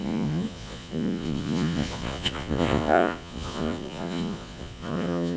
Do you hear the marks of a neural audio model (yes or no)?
yes